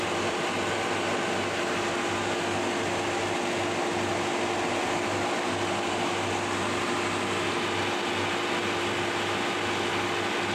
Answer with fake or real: real